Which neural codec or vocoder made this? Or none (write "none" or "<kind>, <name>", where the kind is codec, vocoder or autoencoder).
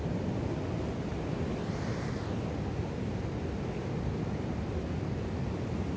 none